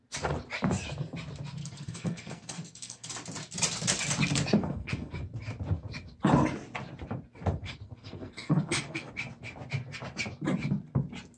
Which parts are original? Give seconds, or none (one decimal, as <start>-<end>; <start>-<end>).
0.0-1.6; 3.1-4.6; 5.1-7.6; 9.1-11.4